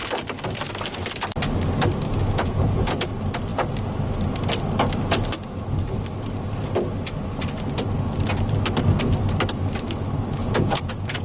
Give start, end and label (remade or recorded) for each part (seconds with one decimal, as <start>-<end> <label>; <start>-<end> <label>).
0.0-2.2 recorded; 2.2-3.1 remade; 3.1-10.4 recorded; 10.4-11.2 remade

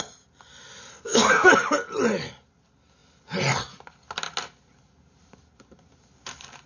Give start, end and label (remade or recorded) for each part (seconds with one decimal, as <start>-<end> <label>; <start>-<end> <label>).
0.0-0.9 recorded; 0.9-1.5 remade; 1.5-6.7 recorded

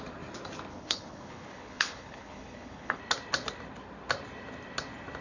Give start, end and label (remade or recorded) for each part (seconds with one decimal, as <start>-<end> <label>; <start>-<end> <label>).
0.0-0.7 recorded; 0.7-3.0 remade; 3.0-5.2 recorded

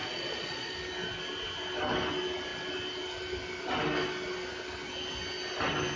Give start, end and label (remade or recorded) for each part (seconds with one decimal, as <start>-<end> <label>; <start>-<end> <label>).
0.0-0.7 remade; 0.7-6.0 recorded

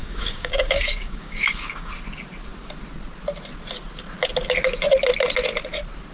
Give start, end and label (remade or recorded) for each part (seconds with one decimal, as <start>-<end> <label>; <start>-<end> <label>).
0.0-1.9 remade; 1.9-6.1 recorded

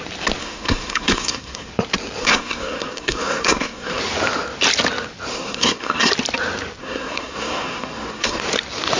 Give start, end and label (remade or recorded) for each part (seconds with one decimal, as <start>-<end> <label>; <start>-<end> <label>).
0.0-0.4 recorded; 0.4-1.7 remade; 1.7-2.2 recorded; 2.2-4.0 remade; 4.0-5.3 recorded; 5.3-6.1 remade; 6.1-6.8 recorded; 6.8-8.4 remade; 8.4-9.0 recorded

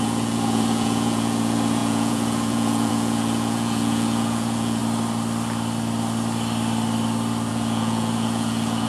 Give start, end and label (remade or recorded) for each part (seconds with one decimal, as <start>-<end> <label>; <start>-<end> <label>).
0.0-4.8 remade; 4.8-7.5 recorded; 7.5-8.9 remade